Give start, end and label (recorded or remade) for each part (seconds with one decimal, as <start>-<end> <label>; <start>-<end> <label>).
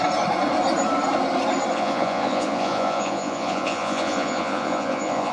0.0-1.7 recorded; 1.7-5.3 remade